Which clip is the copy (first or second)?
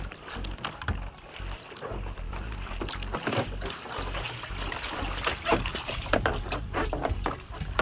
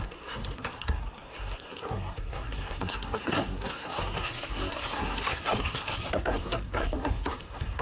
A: second